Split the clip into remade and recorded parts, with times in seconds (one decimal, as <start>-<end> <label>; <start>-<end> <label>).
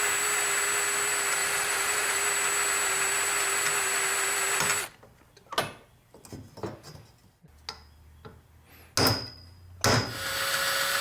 0.0-1.4 recorded; 1.4-2.2 remade; 2.2-11.0 recorded